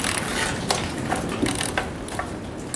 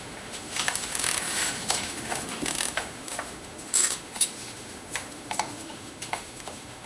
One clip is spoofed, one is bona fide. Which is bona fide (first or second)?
first